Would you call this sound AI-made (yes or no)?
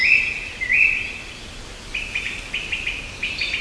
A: yes